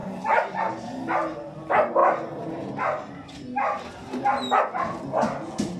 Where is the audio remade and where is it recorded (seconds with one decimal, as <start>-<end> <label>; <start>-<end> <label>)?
0.0-5.8 recorded